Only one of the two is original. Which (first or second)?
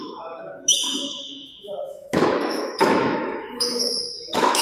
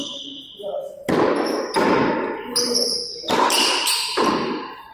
second